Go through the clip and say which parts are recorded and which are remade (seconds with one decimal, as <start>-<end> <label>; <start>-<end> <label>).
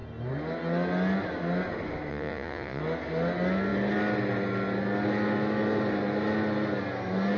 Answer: 0.0-2.1 recorded; 2.1-2.8 remade; 2.8-7.4 recorded